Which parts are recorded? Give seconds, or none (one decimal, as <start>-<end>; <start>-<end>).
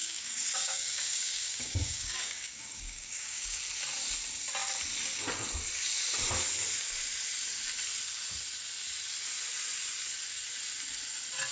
3.6-11.5